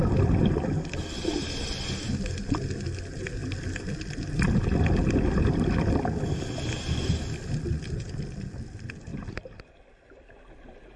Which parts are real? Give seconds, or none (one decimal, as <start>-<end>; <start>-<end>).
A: 0.0-11.0